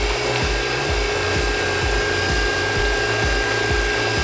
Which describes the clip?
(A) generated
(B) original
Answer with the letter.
B